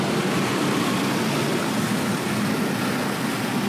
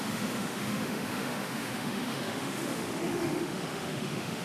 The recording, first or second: first